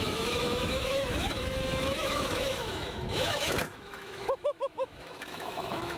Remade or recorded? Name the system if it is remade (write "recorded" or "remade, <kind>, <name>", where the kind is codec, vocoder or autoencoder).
remade, autoencoder, DAC-VAE